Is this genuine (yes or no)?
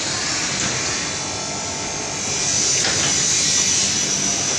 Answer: yes